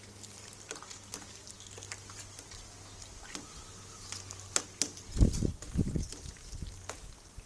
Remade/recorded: recorded